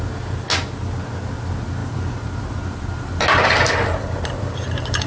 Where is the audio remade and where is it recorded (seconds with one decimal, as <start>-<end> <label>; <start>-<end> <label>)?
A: 0.0-1.8 recorded; 1.8-5.1 remade